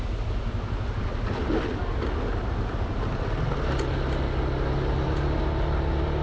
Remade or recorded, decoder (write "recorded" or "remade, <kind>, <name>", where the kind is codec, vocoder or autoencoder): recorded